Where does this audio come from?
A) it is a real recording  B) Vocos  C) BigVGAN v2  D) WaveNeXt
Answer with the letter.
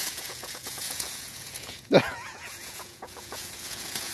B